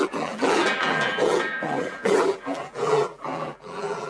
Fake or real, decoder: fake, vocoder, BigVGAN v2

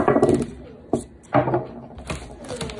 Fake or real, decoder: real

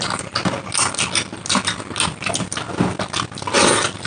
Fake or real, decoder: real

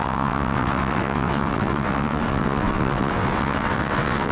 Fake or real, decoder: fake, vocoder, WaveNeXt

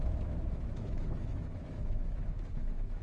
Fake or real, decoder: fake, autoencoder, DAC-VAE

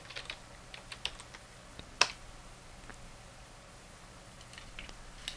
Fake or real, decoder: real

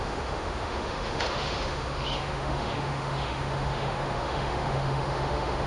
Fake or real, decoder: fake, autoencoder, DAC-VAE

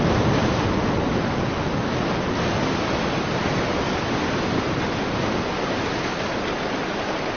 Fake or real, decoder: real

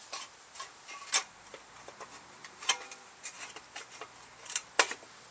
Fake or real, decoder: real